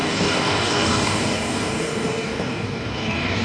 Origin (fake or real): fake